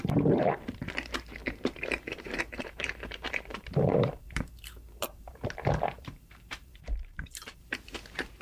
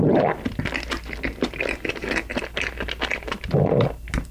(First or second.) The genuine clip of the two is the second